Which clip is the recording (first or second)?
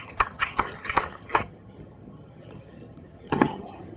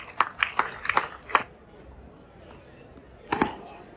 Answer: second